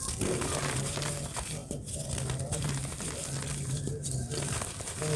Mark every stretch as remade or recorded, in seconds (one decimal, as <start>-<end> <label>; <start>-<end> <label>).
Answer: 0.0-5.2 recorded